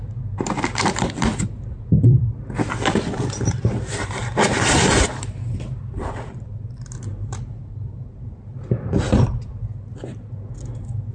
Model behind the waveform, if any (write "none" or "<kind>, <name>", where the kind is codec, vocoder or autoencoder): none